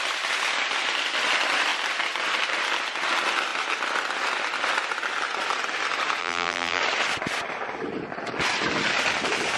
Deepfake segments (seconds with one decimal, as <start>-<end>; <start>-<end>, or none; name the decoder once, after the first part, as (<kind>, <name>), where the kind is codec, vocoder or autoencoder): 6.2-6.8 (vocoder, BigVGAN v2)

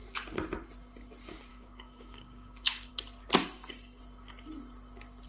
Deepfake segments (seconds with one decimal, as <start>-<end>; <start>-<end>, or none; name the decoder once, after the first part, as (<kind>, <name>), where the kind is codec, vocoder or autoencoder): 1.5-2.9 (codec, DAC); 3.4-4.0

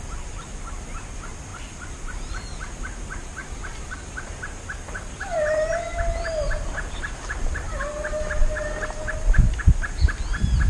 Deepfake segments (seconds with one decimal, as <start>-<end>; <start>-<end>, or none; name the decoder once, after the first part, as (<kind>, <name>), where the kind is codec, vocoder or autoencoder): 1.5-2.8 (vocoder, BigVGAN v2); 3.4-7.9

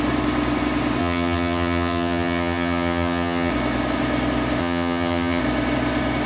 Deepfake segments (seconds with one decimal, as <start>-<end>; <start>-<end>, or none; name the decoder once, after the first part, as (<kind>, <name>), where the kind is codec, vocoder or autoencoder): 1.0-3.5 (vocoder, HiFi-GAN); 4.6-5.4

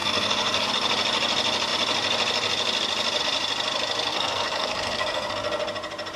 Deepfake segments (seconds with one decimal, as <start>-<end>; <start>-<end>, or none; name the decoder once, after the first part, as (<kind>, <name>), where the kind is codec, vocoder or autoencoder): 0.0-0.7 (codec, SNAC); 4.1-5.3

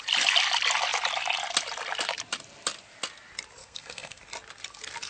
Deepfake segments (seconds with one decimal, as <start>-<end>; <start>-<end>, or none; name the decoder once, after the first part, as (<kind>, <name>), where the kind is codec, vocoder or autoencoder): 3.6-4.2 (codec, SNAC)

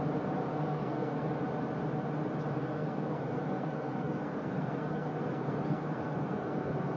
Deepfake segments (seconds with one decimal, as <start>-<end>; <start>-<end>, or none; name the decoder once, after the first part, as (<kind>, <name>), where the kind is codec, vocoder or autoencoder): 0.5-1.3 (codec, SNAC); 2.5-7.0